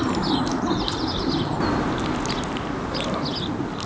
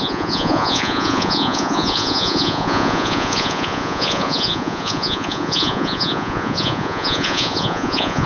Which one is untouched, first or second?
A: first